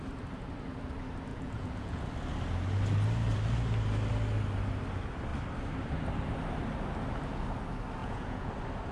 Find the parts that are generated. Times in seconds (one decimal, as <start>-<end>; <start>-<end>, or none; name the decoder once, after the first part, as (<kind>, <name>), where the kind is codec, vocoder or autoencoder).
1.3-2.0 (vocoder, Vocos); 8.0-8.5